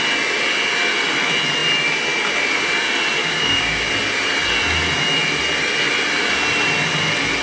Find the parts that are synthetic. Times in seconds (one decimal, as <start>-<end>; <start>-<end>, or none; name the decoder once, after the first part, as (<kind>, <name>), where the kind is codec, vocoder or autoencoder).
3.2-3.9 (codec, DAC)